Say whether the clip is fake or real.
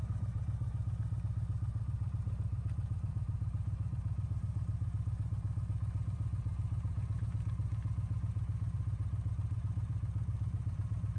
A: fake